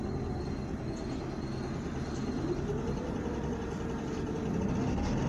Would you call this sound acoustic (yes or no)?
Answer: yes